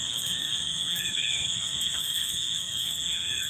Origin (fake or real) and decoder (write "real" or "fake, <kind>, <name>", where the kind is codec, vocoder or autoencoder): fake, codec, SNAC